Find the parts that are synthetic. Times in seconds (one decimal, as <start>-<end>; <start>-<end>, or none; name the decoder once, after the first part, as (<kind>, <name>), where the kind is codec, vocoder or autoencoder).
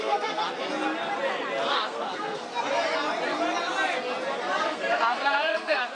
0.0-0.4 (codec, SNAC); 1.7-2.5; 4.6-5.9